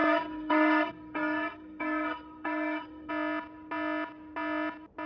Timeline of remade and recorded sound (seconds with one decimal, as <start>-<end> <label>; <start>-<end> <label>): 0.0-3.1 remade; 3.1-5.1 recorded